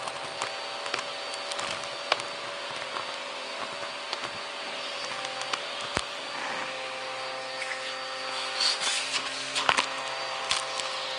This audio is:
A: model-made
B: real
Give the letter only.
B